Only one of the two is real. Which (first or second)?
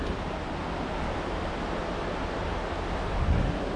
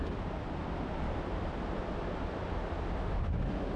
first